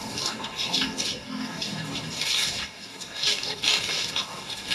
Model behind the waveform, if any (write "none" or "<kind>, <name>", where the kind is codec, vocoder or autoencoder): codec, DAC